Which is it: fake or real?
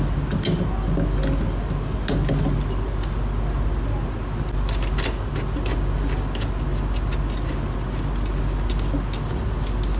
real